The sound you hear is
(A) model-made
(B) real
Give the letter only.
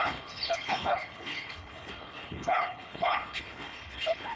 A